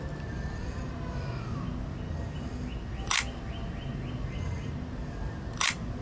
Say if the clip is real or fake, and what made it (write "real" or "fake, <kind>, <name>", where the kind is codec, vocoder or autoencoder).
real